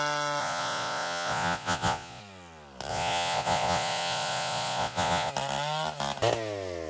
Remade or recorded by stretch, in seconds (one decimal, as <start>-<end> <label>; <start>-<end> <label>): 0.0-0.4 recorded; 0.4-2.2 remade; 2.2-2.9 recorded; 2.9-5.3 remade; 5.3-6.9 recorded